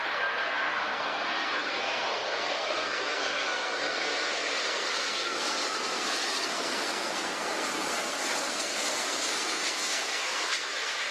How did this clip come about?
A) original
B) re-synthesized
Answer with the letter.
B